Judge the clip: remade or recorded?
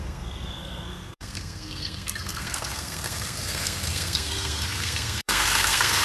remade